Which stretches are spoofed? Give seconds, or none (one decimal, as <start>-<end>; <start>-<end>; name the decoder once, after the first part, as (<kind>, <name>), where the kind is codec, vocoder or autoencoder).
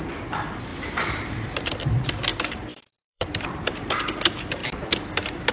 0.7-1.7 (vocoder, BigVGAN v2); 2.3-3.7